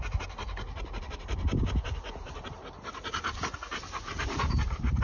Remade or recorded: remade